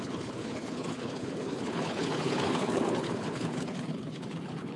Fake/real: fake